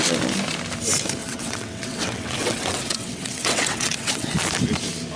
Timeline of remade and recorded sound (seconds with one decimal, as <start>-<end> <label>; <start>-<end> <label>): 0.0-1.2 recorded; 1.2-4.3 remade; 4.3-5.2 recorded